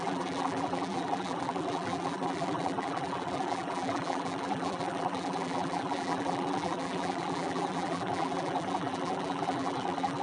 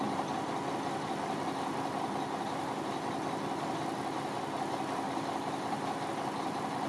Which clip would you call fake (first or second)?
first